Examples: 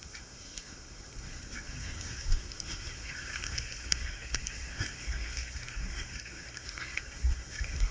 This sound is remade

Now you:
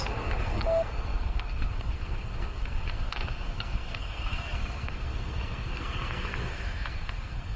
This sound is remade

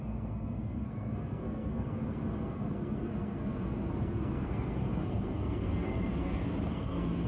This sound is remade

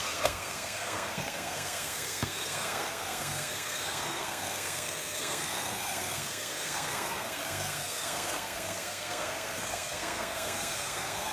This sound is remade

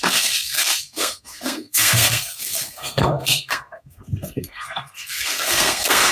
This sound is remade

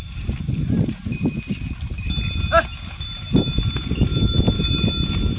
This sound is recorded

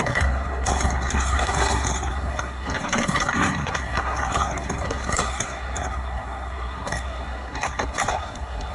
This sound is remade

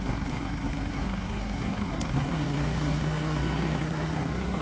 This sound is remade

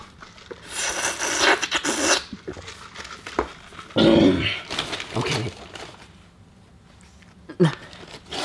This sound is recorded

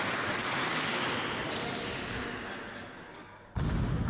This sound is recorded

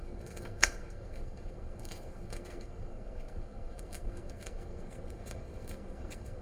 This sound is remade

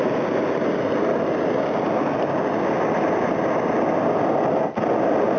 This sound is recorded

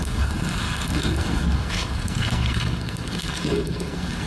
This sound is remade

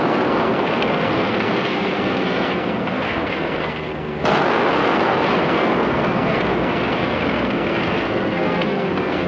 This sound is remade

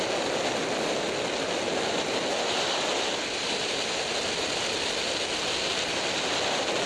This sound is recorded